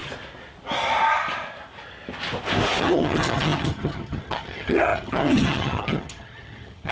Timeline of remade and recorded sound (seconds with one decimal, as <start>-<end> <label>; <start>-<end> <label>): 0.0-2.8 recorded; 2.8-6.9 remade